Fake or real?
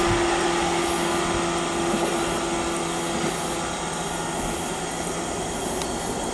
real